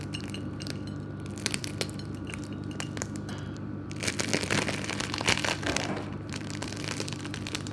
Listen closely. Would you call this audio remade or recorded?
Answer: remade